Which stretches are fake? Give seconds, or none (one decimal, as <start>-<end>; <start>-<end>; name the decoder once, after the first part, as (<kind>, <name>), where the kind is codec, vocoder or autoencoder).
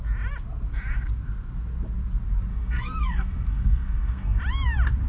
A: 2.5-4.4 (codec, SNAC)